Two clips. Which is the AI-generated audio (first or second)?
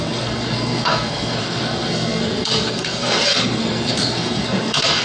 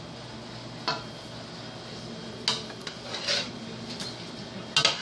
first